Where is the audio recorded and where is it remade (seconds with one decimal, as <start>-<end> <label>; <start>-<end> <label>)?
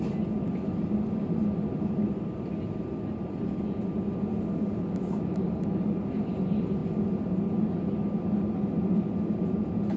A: 0.0-10.0 recorded